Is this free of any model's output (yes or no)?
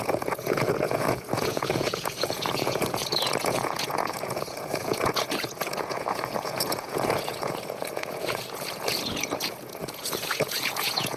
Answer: no